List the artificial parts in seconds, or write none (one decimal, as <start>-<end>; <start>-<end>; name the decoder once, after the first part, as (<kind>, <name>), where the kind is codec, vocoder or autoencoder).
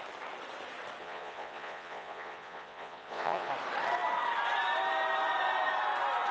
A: 1.0-3.5 (vocoder, Vocos)